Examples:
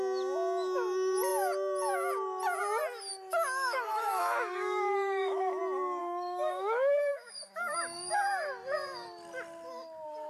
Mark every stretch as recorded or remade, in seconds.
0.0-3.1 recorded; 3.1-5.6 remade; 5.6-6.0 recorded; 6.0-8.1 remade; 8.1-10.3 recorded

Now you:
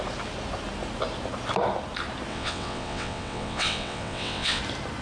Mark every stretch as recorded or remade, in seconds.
0.0-2.3 recorded; 2.3-4.6 remade; 4.6-5.0 recorded

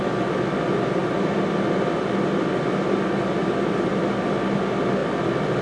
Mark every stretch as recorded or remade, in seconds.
0.0-1.0 recorded; 1.0-2.0 remade; 2.0-3.4 recorded; 3.4-3.9 remade; 3.9-5.0 recorded; 5.0-5.6 remade

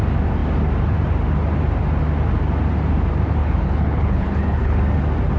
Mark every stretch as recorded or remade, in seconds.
0.0-3.4 recorded; 3.4-4.8 remade; 4.8-5.4 recorded

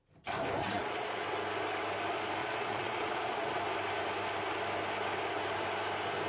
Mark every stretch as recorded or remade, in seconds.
0.0-0.6 recorded; 0.6-1.2 remade; 1.2-2.4 recorded; 2.4-3.6 remade; 3.6-6.3 recorded

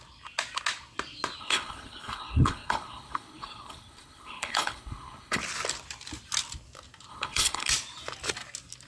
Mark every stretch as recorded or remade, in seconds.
0.0-1.4 recorded; 1.4-5.4 remade; 5.4-7.1 recorded; 7.1-7.7 remade; 7.7-8.9 recorded

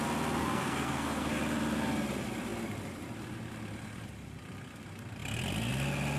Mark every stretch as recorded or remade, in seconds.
0.0-0.4 recorded; 0.4-1.4 remade; 1.4-6.2 recorded